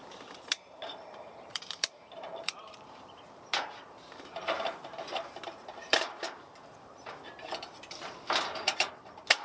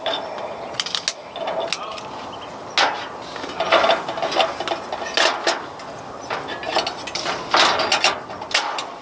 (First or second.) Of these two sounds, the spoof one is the first